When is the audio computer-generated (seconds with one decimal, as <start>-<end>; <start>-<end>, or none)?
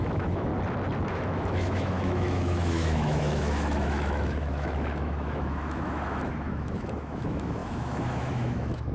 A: 0.0-0.5; 1.1-8.9